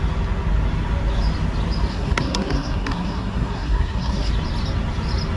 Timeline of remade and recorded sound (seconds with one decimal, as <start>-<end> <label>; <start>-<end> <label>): 0.0-1.9 recorded; 1.9-4.3 remade; 4.3-5.4 recorded